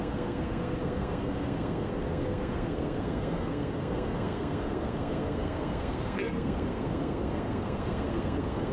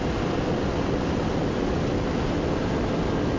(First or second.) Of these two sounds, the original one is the second